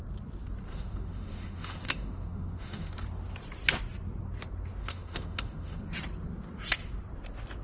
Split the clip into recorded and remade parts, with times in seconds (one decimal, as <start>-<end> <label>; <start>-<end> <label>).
0.0-0.7 recorded; 0.7-2.9 remade; 2.9-4.8 recorded; 4.8-5.8 remade; 5.8-7.6 recorded